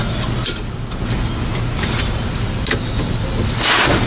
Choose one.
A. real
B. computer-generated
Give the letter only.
A